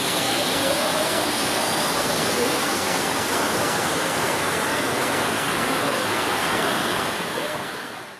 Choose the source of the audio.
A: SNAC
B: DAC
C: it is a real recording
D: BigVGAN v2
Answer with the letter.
A